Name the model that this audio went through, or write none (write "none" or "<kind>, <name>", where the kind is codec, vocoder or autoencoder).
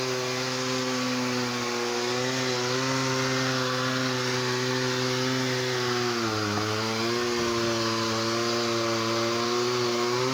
none